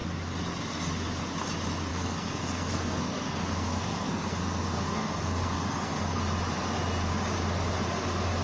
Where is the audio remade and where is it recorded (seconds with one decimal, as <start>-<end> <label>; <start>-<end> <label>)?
0.0-1.9 recorded; 1.9-6.2 remade; 6.2-8.4 recorded

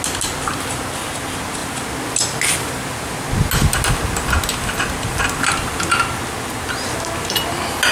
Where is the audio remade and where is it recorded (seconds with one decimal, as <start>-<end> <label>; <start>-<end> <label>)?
0.0-7.9 recorded

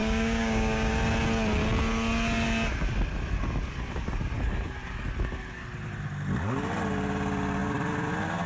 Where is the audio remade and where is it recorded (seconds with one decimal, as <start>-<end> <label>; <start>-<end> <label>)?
0.0-0.9 remade; 0.9-8.5 recorded